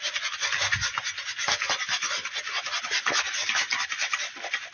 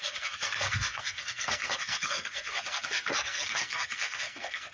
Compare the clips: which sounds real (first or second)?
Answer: first